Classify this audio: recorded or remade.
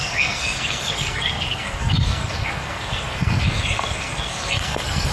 remade